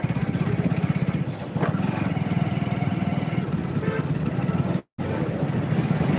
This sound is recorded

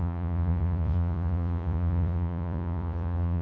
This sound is remade